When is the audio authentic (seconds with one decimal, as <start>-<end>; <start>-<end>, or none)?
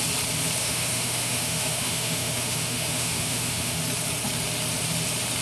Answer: 0.0-0.6; 3.8-5.4